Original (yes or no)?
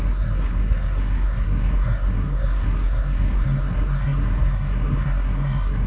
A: no